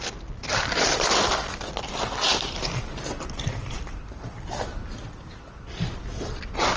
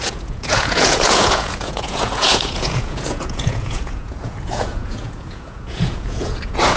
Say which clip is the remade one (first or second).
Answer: second